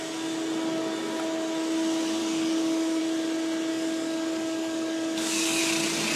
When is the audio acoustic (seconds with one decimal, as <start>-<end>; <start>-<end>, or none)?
0.0-2.2; 3.0-3.7; 5.6-6.2